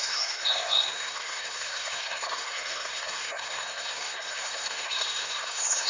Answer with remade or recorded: remade